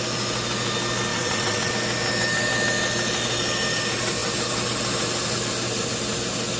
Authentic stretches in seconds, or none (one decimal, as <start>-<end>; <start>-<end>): 0.0-1.1; 1.7-6.6